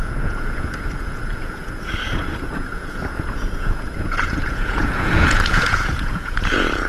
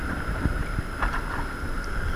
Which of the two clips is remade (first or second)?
first